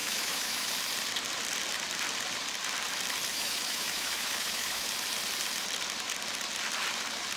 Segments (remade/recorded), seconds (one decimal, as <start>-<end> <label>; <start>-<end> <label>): 0.0-0.7 remade; 0.7-3.3 recorded; 3.3-4.9 remade; 4.9-7.4 recorded